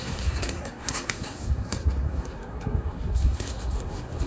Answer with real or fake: fake